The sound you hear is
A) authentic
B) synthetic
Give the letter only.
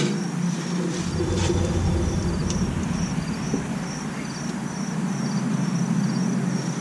A